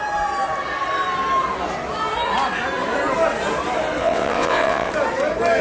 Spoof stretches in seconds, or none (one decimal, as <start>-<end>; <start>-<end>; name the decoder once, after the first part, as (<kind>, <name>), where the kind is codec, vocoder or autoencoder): 4.0-4.9 (vocoder, WaveNeXt)